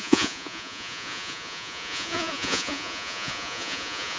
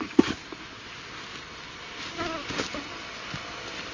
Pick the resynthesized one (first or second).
first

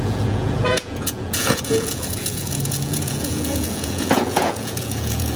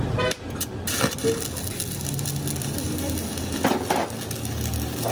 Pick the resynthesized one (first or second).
first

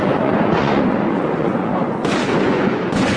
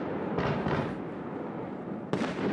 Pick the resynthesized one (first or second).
first